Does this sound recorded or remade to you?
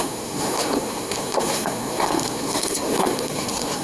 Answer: remade